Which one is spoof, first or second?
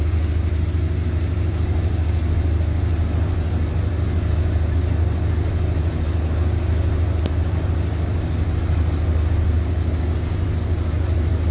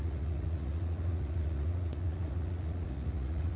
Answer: second